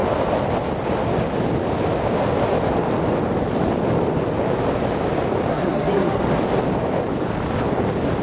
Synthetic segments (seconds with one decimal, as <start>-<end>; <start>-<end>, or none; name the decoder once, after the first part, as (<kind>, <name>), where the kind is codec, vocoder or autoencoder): 5.5-6.2 (codec, SNAC)